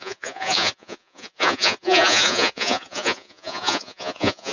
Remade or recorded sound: remade